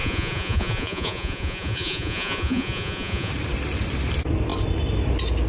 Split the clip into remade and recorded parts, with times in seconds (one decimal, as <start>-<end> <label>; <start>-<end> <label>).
0.0-3.3 remade; 3.3-5.5 recorded